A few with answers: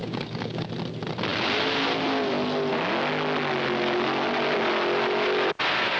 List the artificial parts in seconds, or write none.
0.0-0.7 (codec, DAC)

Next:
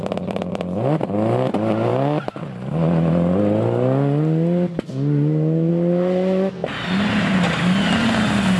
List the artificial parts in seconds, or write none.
none

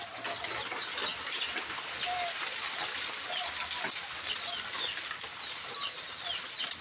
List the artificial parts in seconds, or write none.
none

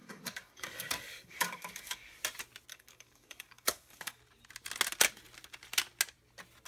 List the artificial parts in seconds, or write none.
0.0-2.2 (codec, DAC); 2.7-4.2

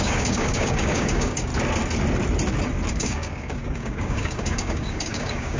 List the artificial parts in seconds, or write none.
0.0-1.5 (codec, DAC); 2.9-5.6

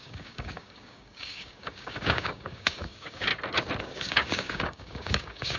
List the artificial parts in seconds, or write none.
0.0-3.3 (codec, DAC); 3.8-5.6

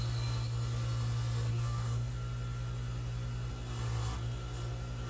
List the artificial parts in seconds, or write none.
1.5-2.1 (codec, DAC)